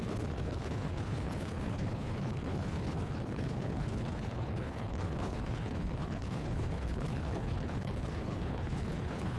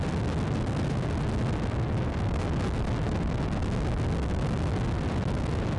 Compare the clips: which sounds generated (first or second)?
first